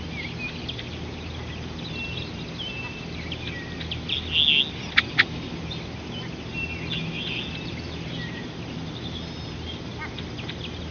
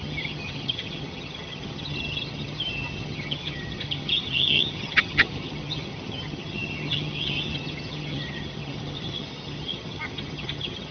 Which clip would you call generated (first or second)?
second